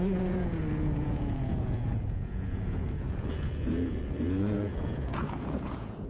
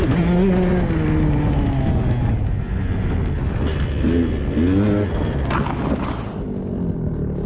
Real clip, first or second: second